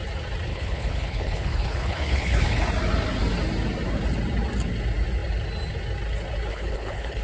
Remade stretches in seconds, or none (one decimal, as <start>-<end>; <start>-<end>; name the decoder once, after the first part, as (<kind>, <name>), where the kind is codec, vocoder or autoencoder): 0.5-2.6 (codec, HILCodec); 6.5-7.2